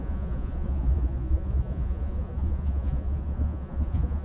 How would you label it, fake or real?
fake